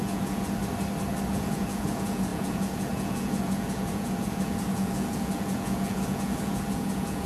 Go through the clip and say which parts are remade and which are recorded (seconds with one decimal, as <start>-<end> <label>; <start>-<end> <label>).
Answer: 0.0-0.6 remade; 0.6-1.3 recorded; 1.3-7.3 remade